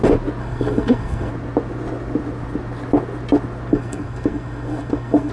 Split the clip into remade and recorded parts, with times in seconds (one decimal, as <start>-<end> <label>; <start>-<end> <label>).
0.0-0.4 recorded; 0.4-1.3 remade; 1.3-3.7 recorded; 3.7-5.3 remade